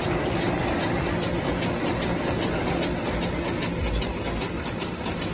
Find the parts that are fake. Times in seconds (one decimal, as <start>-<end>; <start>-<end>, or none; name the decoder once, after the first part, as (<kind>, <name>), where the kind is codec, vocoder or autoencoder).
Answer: none